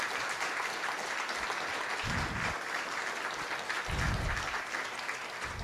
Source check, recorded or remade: recorded